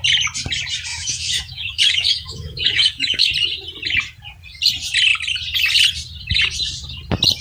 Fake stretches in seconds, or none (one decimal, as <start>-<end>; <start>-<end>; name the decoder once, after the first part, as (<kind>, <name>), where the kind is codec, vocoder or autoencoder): 0.9-3.3 (autoencoder, DAC-VAE)